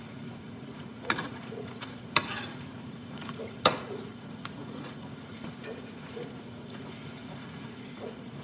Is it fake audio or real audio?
fake